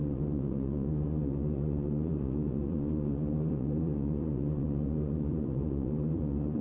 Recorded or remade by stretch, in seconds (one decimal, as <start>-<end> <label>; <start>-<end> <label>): 0.0-6.6 remade